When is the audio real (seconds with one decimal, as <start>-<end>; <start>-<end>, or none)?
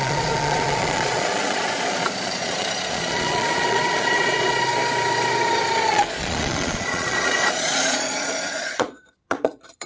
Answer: 4.7-5.9